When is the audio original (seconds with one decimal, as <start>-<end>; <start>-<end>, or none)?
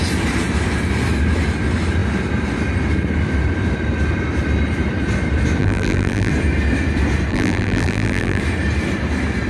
0.0-5.6; 6.3-7.3; 8.4-9.5